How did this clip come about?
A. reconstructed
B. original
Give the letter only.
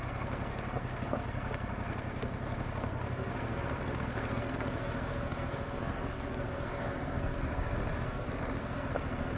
A